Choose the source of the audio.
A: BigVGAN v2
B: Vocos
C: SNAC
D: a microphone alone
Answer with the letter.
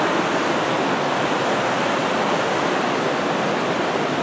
A